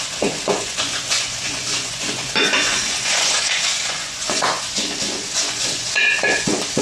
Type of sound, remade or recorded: remade